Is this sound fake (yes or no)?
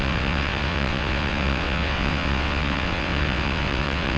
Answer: yes